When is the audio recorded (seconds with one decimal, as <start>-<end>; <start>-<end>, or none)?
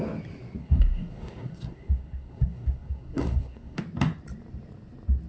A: 0.0-0.6; 3.8-5.3